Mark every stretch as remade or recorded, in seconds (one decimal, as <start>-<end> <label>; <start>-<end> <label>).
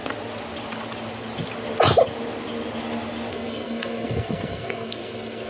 0.0-3.3 recorded; 3.3-5.5 remade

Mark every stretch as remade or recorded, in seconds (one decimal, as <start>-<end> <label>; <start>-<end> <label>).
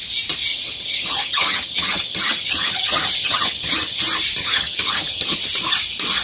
0.0-0.5 recorded; 0.5-4.0 remade; 4.0-4.4 recorded; 4.4-5.4 remade; 5.4-6.2 recorded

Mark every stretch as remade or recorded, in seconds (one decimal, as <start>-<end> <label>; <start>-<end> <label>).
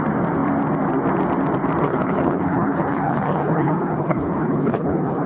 0.0-1.8 recorded; 1.8-5.3 remade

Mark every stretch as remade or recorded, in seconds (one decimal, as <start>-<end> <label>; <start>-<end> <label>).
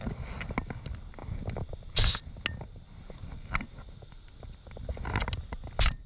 0.0-6.1 recorded